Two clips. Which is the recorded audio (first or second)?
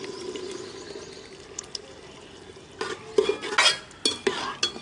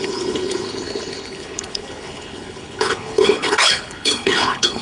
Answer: first